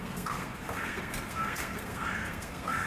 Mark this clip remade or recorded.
remade